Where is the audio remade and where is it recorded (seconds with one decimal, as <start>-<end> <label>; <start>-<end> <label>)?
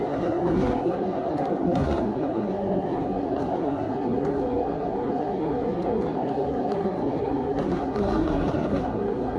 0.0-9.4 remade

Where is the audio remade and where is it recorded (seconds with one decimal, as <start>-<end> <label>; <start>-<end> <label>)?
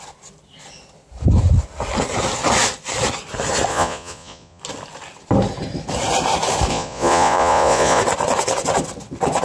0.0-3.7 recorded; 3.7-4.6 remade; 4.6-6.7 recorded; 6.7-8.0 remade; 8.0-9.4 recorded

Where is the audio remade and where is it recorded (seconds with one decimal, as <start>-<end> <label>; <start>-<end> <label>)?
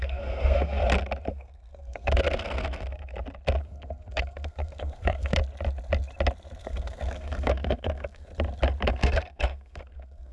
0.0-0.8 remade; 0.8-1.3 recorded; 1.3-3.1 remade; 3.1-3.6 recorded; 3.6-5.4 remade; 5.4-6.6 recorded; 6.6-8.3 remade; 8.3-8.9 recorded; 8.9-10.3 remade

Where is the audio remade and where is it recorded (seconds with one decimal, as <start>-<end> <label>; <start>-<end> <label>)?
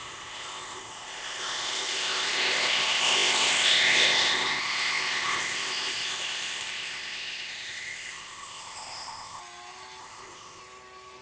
0.0-9.4 remade; 9.4-10.0 recorded; 10.0-10.6 remade; 10.6-11.2 recorded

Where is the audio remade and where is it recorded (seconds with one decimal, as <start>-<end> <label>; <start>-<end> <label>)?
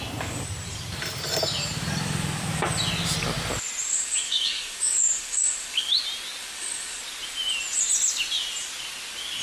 0.0-3.9 recorded; 3.9-5.9 remade; 5.9-6.4 recorded; 6.4-7.0 remade; 7.0-9.4 recorded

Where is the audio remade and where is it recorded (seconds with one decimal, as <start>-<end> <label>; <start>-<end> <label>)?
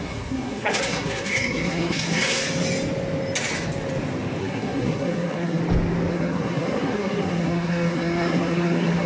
0.0-2.4 remade; 2.4-4.4 recorded; 4.4-5.6 remade; 5.6-6.1 recorded; 6.1-9.1 remade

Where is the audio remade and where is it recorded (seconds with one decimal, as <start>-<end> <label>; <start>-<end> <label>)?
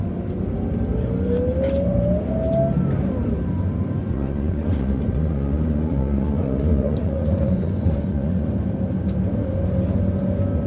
0.0-4.0 recorded; 4.0-8.5 remade; 8.5-10.7 recorded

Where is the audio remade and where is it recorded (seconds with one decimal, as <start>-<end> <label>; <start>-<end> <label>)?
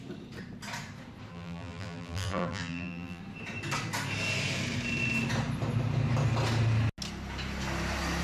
0.0-1.3 recorded; 1.3-3.2 remade; 3.2-8.2 recorded